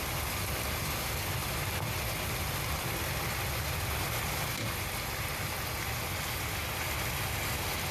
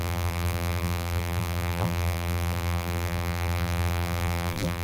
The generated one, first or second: second